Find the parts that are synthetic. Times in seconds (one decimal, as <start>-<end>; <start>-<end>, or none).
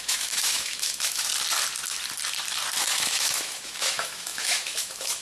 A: 0.0-1.3; 2.8-5.2